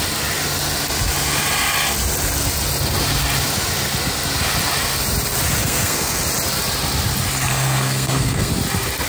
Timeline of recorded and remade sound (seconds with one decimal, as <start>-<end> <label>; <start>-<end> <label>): 0.0-5.6 recorded; 5.6-6.2 remade; 6.2-7.5 recorded; 7.5-8.5 remade; 8.5-9.1 recorded